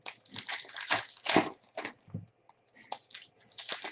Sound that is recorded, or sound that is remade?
recorded